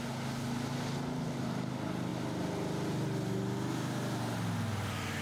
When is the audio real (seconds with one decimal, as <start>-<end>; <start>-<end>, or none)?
0.0-5.2